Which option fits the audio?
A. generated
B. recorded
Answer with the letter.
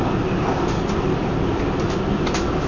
B